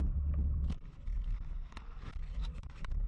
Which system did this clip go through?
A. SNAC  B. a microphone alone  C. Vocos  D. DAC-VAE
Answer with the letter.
B